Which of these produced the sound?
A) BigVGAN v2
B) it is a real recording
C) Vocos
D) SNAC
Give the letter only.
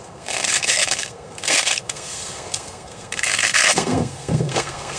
D